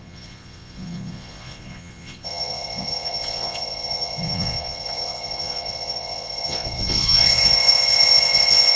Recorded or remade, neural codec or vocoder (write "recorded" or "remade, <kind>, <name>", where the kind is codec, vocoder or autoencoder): remade, vocoder, Vocos